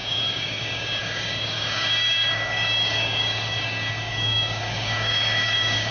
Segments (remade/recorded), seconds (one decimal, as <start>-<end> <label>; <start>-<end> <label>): 0.0-5.9 remade